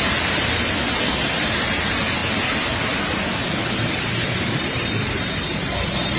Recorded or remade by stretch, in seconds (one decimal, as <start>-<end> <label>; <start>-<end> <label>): 0.0-6.2 recorded